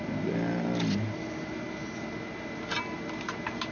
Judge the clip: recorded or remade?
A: recorded